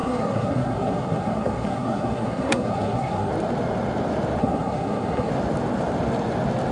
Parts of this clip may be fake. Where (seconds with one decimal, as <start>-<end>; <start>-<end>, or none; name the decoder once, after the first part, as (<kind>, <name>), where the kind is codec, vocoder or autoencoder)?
0.0-3.3 (codec, SNAC); 4.4-5.3